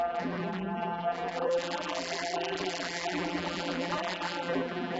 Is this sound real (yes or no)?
no